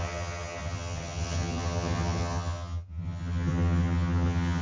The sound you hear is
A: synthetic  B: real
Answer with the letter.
A